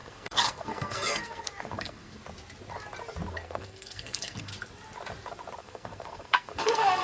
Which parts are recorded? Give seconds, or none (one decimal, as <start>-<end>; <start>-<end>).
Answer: 2.2-3.3; 4.5-5.6